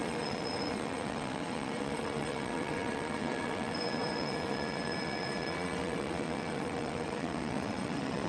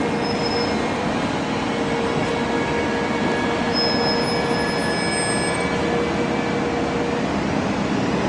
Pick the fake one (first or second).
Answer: first